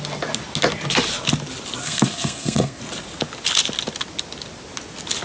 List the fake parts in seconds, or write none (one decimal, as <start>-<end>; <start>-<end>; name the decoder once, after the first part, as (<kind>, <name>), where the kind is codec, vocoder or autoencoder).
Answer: 1.8-2.8 (codec, SNAC)